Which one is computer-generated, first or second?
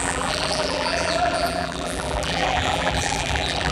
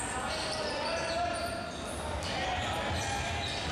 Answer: first